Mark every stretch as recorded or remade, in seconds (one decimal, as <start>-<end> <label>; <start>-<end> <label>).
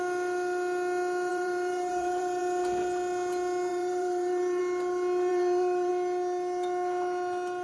0.0-1.3 recorded; 1.3-2.4 remade; 2.4-3.7 recorded; 3.7-4.6 remade; 4.6-5.3 recorded; 5.3-5.9 remade; 5.9-7.6 recorded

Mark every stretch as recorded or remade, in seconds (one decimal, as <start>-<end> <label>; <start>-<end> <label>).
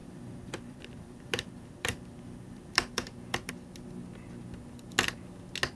0.0-3.5 remade; 3.5-5.8 recorded